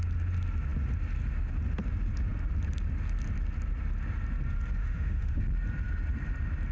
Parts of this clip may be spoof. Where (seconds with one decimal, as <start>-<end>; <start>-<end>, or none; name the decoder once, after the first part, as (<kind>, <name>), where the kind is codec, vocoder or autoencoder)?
4.8-5.4 (autoencoder, DAC-VAE)